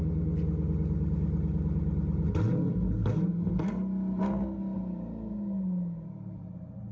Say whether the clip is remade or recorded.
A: recorded